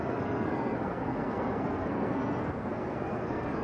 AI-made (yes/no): yes